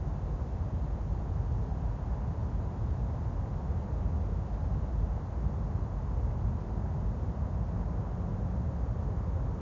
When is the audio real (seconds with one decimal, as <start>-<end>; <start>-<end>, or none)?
0.0-9.6